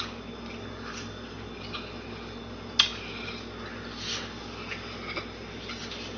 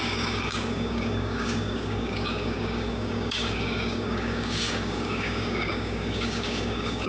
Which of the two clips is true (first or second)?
first